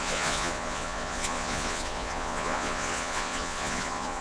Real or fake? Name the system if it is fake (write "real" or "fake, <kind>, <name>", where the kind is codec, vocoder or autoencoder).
fake, vocoder, Vocos